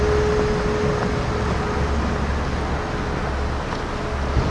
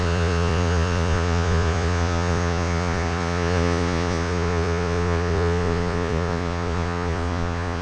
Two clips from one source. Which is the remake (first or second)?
second